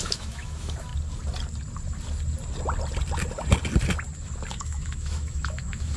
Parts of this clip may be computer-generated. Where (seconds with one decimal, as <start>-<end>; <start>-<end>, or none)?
0.0-0.9; 4.5-6.0